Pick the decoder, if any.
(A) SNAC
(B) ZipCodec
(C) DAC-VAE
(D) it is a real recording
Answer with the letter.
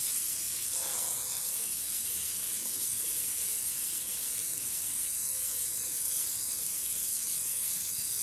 A